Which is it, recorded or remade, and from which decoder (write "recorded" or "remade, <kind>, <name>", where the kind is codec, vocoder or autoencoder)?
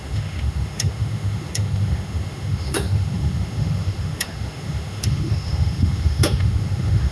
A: remade, autoencoder, DAC-VAE